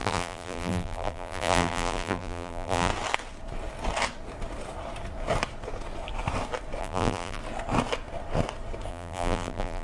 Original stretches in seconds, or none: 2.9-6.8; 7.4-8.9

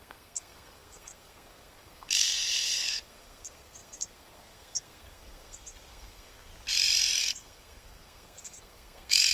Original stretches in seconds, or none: 6.5-7.2

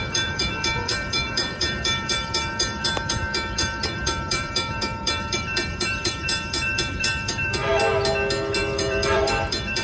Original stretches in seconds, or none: 7.7-8.6